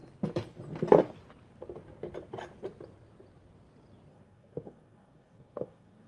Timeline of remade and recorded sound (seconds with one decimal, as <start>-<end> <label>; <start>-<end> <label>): 0.0-4.1 recorded; 4.1-6.1 remade